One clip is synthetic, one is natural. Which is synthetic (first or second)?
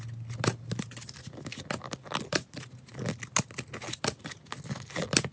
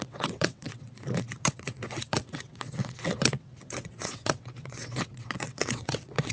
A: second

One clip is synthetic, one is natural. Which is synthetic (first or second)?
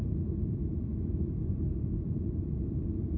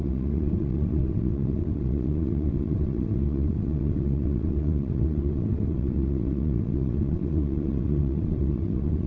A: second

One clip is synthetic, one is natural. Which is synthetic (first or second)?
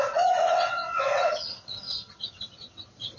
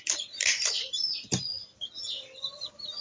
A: first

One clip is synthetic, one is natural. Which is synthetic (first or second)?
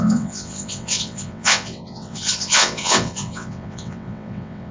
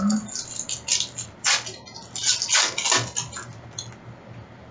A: first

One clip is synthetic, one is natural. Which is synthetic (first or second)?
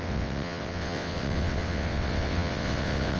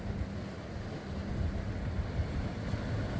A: first